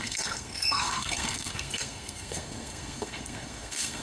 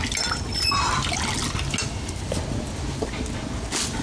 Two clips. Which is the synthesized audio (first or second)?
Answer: first